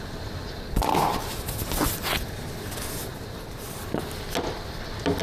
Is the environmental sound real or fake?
real